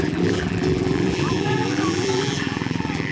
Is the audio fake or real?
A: fake